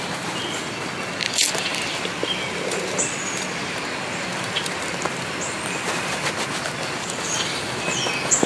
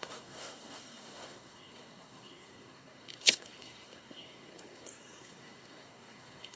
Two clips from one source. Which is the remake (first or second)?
second